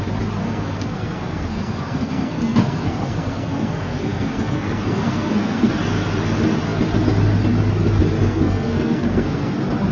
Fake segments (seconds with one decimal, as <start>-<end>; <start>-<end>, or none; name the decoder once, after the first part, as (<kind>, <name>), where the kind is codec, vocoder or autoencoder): 0.4-5.7 (codec, SNAC); 8.2-9.5